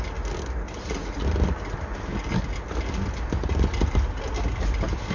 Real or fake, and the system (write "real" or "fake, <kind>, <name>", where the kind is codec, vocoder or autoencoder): real